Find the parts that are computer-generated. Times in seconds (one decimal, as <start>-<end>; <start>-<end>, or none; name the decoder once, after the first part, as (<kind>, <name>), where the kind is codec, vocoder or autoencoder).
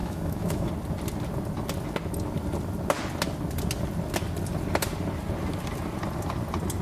0.0-0.7 (autoencoder, DAC-VAE)